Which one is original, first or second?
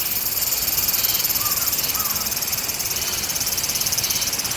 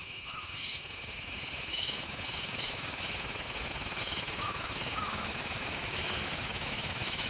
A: first